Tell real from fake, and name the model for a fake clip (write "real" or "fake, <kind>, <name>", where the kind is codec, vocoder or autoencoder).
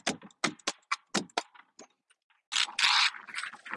real